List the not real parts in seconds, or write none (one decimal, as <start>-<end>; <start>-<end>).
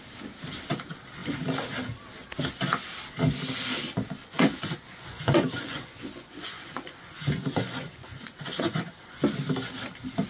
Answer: 4.2-9.2